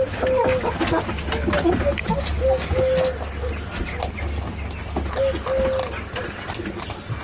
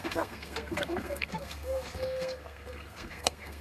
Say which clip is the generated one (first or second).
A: second